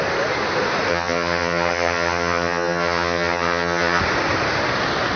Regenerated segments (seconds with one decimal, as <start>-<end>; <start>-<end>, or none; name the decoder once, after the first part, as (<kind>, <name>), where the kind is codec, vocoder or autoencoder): 0.9-4.0 (vocoder, HiFi-GAN)